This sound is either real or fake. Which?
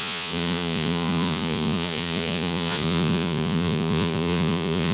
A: fake